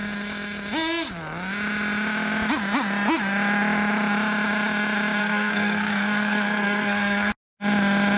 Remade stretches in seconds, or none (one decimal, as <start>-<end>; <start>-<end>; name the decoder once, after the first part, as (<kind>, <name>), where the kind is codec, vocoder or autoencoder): 5.2-7.3 (codec, SNAC)